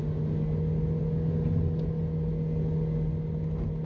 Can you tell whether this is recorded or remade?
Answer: recorded